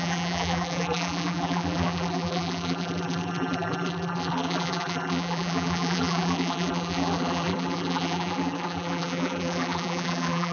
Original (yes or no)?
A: no